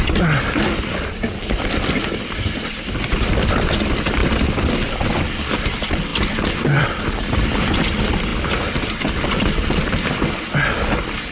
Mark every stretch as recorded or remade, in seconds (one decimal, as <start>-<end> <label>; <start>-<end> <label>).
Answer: 0.0-11.3 recorded